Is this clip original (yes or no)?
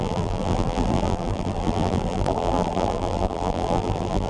no